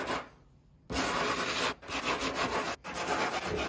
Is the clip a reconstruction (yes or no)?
no